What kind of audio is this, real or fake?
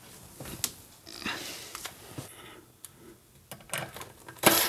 real